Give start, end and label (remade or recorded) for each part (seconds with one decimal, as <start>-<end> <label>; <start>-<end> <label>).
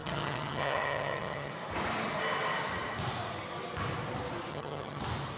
0.0-1.5 remade; 1.5-4.5 recorded; 4.5-5.0 remade; 5.0-5.4 recorded